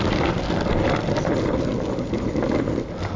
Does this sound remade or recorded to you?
recorded